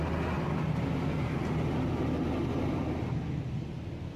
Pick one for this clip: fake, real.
real